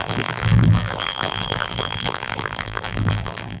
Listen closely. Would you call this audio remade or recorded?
remade